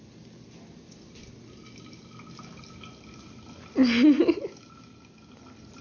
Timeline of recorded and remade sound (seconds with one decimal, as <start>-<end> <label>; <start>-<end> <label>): 0.0-5.8 recorded